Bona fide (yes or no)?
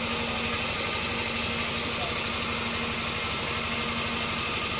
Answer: yes